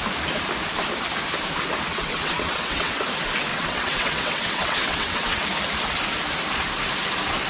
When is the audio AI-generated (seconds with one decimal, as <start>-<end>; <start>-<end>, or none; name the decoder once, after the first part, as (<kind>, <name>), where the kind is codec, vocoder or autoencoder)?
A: 1.9-3.0 (vocoder, WaveNeXt); 3.5-5.4